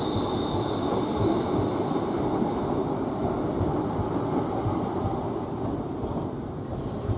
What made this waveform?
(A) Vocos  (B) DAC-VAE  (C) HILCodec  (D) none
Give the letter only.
D